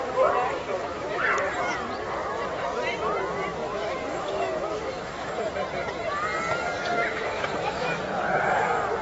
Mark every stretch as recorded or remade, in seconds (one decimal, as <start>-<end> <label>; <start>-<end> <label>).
0.0-0.7 recorded; 0.7-1.2 remade; 1.2-3.6 recorded; 3.6-5.3 remade; 5.3-7.0 recorded; 7.0-8.0 remade; 8.0-9.0 recorded